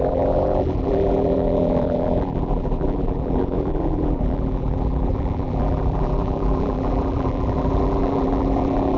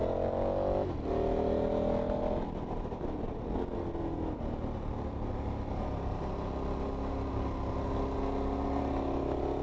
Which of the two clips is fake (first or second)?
first